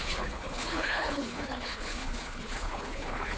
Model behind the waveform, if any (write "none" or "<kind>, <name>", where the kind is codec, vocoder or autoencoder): codec, HILCodec